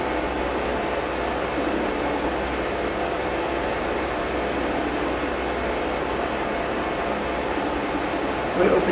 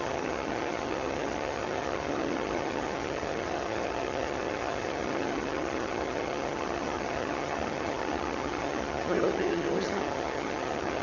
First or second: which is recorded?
first